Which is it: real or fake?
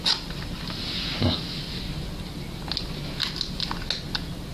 real